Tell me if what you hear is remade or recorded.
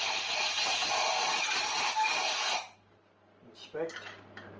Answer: recorded